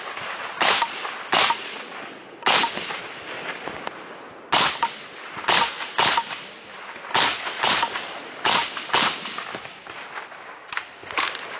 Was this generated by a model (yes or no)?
no